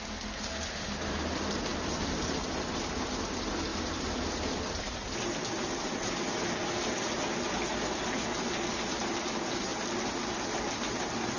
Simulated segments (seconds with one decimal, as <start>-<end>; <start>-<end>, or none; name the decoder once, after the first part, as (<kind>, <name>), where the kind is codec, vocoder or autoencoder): 1.7-2.5 (vocoder, BigVGAN v2); 3.7-6.2